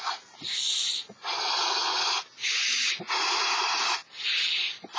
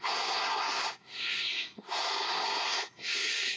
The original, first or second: first